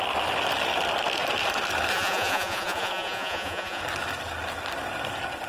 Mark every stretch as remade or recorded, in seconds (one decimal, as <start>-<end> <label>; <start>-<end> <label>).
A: 0.0-1.9 recorded; 1.9-3.8 remade; 3.8-5.5 recorded